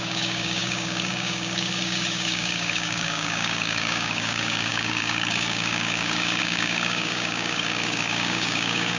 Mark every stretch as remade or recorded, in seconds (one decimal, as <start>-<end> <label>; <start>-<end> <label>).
0.0-9.0 remade